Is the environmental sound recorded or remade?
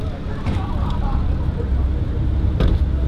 recorded